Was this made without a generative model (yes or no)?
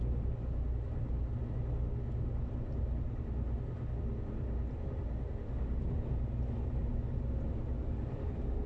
yes